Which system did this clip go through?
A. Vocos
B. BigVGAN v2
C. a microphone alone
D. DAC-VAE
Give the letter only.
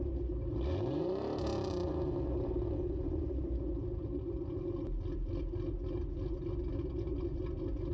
C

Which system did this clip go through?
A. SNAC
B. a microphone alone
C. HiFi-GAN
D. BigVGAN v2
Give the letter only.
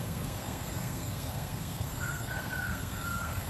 A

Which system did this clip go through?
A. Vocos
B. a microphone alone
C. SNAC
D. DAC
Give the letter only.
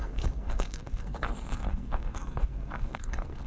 C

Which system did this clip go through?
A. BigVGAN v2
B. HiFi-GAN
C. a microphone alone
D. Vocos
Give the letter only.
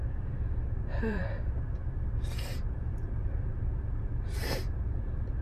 A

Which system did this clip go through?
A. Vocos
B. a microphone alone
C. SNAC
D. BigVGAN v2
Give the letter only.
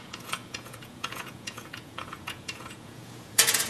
A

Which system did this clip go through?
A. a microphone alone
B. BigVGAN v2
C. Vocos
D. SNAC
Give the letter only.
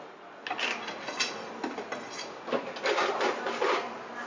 A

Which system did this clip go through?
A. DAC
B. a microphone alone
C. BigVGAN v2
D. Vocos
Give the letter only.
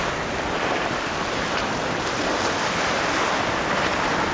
C